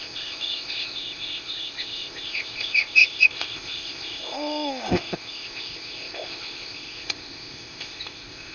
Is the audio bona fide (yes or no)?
no